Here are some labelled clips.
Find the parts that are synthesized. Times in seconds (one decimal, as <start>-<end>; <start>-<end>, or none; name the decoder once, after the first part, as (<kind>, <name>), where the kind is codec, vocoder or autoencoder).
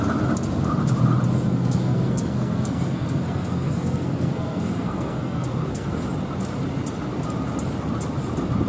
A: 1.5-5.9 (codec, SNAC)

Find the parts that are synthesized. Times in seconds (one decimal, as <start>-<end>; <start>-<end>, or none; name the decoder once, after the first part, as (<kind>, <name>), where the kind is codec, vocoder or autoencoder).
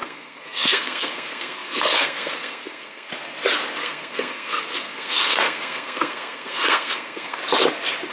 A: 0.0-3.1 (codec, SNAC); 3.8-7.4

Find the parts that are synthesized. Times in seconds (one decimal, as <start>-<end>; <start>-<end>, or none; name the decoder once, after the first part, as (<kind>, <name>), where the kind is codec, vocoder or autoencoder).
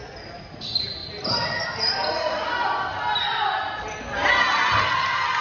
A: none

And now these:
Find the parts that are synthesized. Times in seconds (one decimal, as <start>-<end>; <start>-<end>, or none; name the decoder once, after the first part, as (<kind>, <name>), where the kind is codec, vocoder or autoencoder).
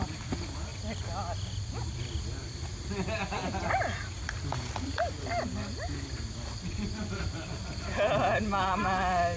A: none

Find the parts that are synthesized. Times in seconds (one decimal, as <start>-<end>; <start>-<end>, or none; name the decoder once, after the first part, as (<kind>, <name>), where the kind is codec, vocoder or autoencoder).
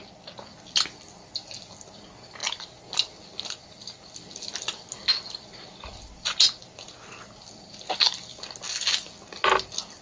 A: none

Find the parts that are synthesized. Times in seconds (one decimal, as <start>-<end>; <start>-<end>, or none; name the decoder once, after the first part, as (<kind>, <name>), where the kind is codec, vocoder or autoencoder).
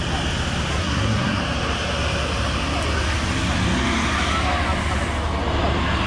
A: 0.7-1.4 (codec, SNAC)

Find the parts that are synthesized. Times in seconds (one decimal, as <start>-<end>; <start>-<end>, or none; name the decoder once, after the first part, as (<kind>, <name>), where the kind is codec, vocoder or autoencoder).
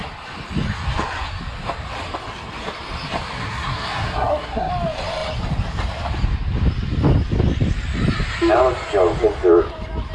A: 3.4-4.7 (codec, SNAC)